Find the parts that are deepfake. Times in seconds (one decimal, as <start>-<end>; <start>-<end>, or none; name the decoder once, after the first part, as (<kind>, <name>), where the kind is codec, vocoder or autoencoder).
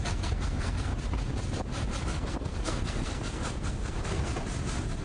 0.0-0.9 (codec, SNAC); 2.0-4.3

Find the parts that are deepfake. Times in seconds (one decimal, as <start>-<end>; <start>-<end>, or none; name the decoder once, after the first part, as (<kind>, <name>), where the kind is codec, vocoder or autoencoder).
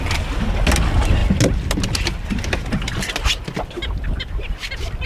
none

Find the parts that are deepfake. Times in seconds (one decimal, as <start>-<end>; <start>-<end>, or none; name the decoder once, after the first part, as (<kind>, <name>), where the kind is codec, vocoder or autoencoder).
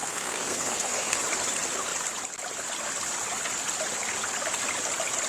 0.0-1.2 (codec, SNAC)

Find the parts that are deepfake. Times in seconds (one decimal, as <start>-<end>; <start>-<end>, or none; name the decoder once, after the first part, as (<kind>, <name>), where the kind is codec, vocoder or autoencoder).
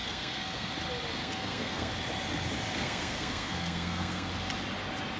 0.0-0.7 (codec, SNAC); 1.2-1.9; 2.7-4.3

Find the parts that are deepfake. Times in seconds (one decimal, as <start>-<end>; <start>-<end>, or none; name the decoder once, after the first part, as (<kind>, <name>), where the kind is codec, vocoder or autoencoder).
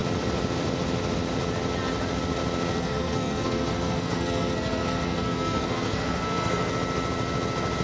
2.7-6.7 (codec, SNAC)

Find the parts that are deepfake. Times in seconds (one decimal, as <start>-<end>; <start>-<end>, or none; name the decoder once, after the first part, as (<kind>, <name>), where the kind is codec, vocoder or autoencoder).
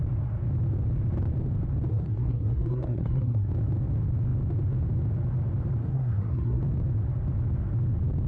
1.9-3.5 (codec, SNAC); 5.8-6.6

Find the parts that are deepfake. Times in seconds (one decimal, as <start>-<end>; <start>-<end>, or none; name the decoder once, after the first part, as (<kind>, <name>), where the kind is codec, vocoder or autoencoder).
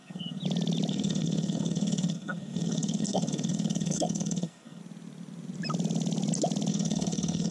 0.0-0.4 (codec, SNAC); 0.9-4.8; 6.7-7.5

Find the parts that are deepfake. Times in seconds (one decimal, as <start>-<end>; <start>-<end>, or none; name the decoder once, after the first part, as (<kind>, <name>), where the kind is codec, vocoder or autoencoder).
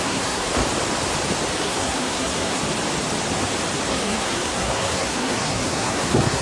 0.0-0.5 (codec, SNAC); 1.6-2.6; 3.9-6.4